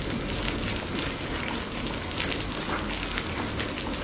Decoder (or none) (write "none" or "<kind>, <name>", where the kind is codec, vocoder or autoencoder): none